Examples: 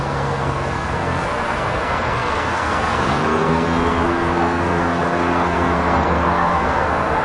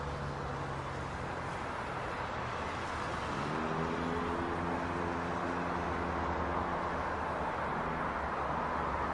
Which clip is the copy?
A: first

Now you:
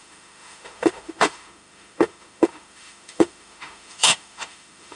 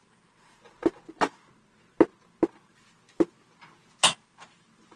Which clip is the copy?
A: first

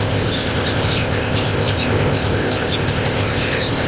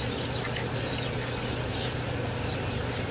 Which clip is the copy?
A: first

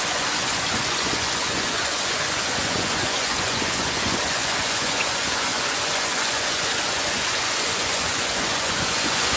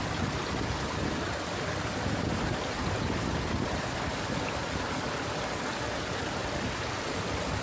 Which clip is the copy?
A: first